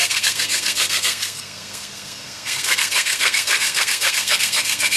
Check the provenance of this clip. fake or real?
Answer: fake